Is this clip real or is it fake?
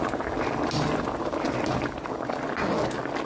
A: real